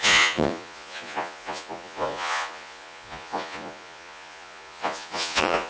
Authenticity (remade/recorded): remade